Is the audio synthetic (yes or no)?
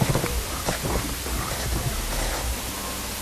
no